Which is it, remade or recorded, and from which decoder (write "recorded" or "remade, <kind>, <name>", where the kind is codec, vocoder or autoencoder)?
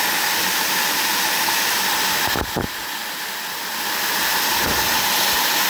recorded